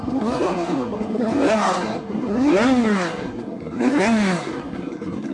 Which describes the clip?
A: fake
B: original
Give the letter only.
A